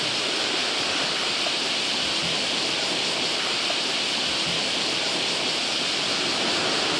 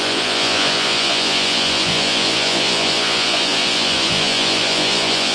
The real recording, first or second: first